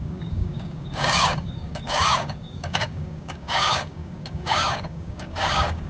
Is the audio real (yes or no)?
no